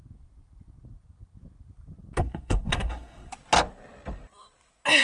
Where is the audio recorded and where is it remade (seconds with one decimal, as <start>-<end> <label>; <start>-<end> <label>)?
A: 0.0-2.2 recorded; 2.2-3.3 remade; 3.3-5.0 recorded